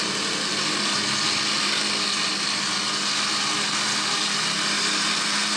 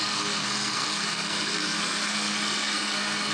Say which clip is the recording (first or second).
first